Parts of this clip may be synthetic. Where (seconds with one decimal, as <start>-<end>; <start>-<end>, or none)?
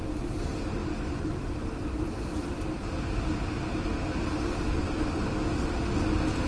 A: none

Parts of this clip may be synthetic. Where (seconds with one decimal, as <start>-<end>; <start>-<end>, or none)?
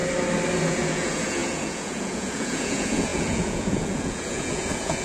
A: 0.7-5.0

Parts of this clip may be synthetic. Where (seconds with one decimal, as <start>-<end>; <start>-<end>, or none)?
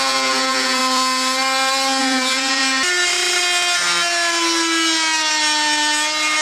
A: 0.0-0.8; 2.0-2.6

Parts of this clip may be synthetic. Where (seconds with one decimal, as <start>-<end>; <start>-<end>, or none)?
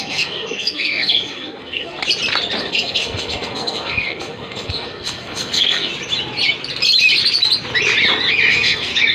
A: 0.0-2.0; 2.6-5.9; 8.5-9.1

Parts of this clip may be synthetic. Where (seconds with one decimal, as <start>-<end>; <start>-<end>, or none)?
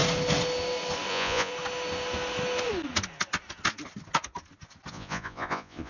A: 1.1-1.5; 4.9-5.9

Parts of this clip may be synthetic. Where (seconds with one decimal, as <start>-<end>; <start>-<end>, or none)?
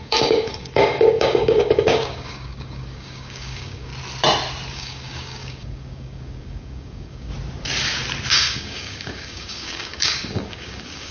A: 0.0-3.9; 4.7-7.3; 8.3-11.1